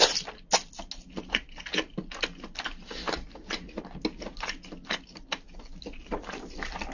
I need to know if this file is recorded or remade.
recorded